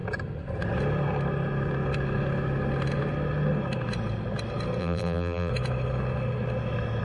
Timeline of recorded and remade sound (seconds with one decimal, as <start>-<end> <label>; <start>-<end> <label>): 0.0-4.8 recorded; 4.8-5.5 remade; 5.5-7.0 recorded